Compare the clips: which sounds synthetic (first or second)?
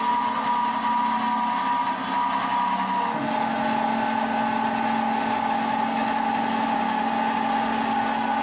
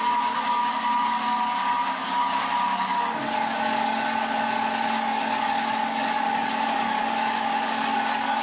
second